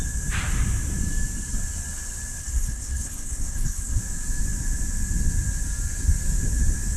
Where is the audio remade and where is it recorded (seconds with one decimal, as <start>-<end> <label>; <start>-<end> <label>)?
0.0-2.4 recorded; 2.4-4.0 remade; 4.0-7.0 recorded